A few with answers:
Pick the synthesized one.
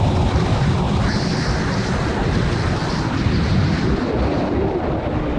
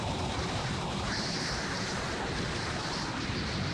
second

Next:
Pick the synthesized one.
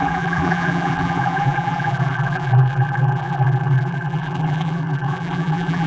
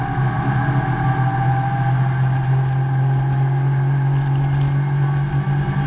first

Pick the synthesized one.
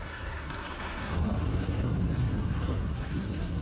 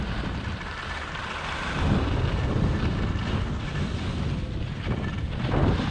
first